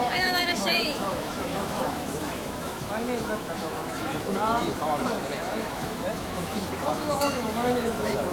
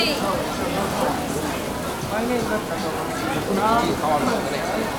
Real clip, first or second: second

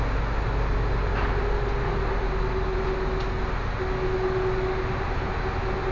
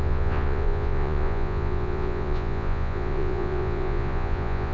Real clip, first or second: first